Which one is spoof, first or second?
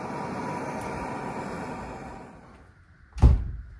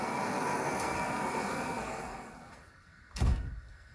second